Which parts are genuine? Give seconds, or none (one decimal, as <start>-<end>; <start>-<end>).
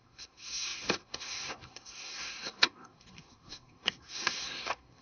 none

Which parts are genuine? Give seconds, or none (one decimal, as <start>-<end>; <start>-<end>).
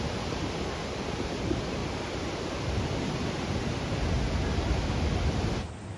0.0-6.0